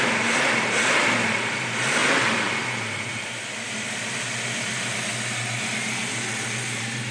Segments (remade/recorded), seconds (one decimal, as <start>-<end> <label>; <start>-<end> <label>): 0.0-2.0 remade; 2.0-3.7 recorded; 3.7-5.1 remade; 5.1-6.3 recorded; 6.3-7.1 remade

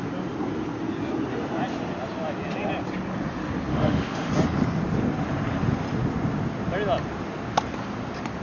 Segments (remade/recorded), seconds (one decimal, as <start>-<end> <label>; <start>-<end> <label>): 0.0-3.7 recorded; 3.7-4.3 remade; 4.3-8.4 recorded

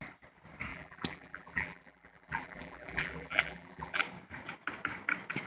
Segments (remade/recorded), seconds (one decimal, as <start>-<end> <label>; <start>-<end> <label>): 0.0-0.7 recorded; 0.7-4.0 remade; 4.0-5.5 recorded

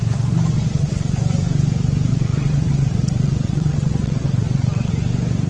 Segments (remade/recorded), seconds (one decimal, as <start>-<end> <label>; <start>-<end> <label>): 0.0-0.7 recorded; 0.7-1.2 remade; 1.2-2.1 recorded; 2.1-4.9 remade; 4.9-5.5 recorded

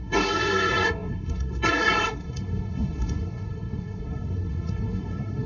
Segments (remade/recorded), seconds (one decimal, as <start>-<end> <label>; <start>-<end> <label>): 0.0-5.5 remade

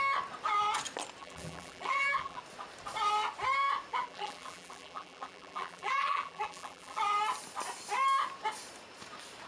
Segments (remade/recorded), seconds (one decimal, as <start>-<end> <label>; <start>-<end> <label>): 0.0-1.2 recorded; 1.2-2.4 remade; 2.4-3.9 recorded; 3.9-7.0 remade; 7.0-9.5 recorded